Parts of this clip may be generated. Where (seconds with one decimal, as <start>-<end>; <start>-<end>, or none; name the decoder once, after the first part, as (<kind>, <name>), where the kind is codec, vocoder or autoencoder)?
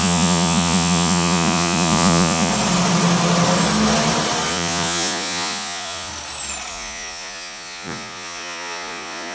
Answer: 0.0-2.5 (vocoder, Vocos); 4.5-6.1; 6.7-9.3